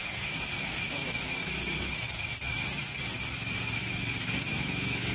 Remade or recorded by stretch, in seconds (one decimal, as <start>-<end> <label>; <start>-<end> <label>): 0.0-1.4 remade; 1.4-4.5 recorded; 4.5-5.1 remade